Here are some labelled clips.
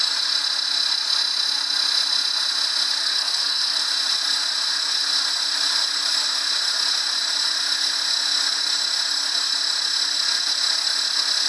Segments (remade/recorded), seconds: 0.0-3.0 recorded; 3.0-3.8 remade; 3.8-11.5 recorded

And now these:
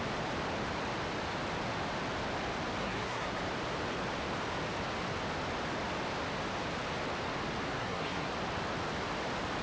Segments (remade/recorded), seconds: 0.0-2.8 recorded; 2.8-3.4 remade; 3.4-7.8 recorded; 7.8-8.3 remade; 8.3-9.6 recorded

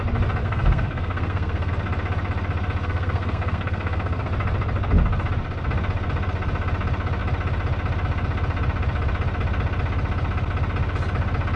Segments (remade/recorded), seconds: 0.0-0.4 recorded; 0.4-1.7 remade; 1.7-2.8 recorded; 2.8-4.3 remade; 4.3-11.6 recorded